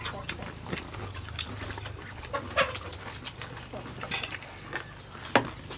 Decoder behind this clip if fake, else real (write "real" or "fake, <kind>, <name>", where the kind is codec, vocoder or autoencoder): real